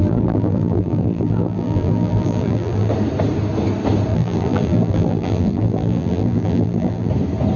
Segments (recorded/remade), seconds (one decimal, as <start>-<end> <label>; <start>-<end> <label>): 0.0-2.9 remade; 2.9-4.1 recorded; 4.1-7.1 remade; 7.1-7.6 recorded